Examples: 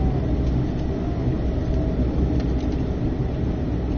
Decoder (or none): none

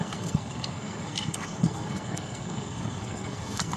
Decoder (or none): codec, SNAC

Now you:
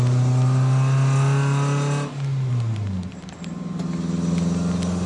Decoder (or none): none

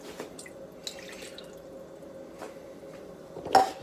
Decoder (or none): none